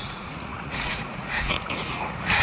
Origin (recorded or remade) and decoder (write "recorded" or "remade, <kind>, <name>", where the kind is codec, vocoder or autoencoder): remade, vocoder, Vocos